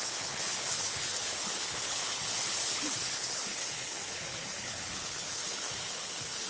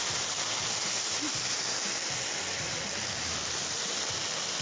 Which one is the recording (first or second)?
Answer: second